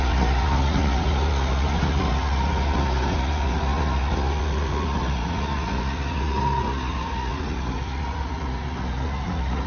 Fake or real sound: fake